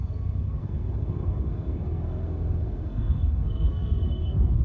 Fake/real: fake